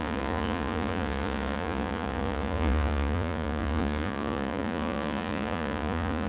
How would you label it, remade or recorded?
remade